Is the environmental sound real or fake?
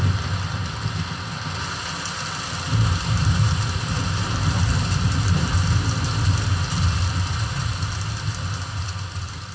real